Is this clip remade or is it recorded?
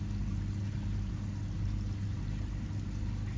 recorded